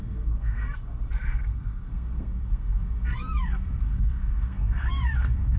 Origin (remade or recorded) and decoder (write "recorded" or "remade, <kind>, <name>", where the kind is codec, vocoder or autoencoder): remade, codec, SNAC